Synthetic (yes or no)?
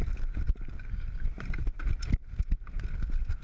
yes